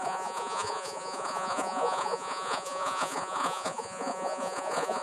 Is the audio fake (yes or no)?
yes